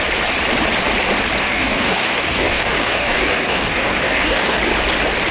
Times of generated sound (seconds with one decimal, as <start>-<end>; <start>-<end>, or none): 1.4-4.6